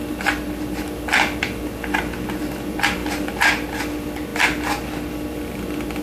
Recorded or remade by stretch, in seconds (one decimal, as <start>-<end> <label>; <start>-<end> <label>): 0.0-3.0 recorded; 3.0-3.8 remade; 3.8-6.0 recorded